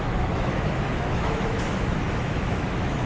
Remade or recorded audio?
remade